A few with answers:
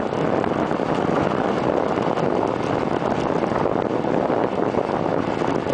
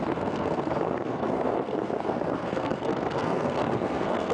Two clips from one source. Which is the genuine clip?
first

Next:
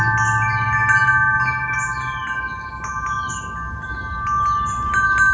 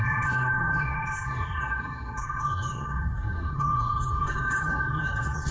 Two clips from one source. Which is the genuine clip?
first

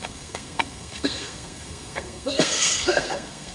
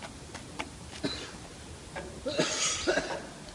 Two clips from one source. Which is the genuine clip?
second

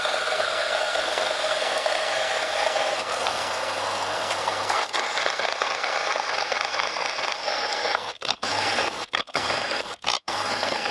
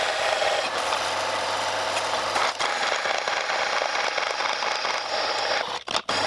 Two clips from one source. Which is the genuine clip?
second